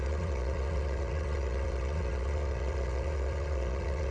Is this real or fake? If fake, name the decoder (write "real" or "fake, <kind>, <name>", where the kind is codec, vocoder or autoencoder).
fake, vocoder, Vocos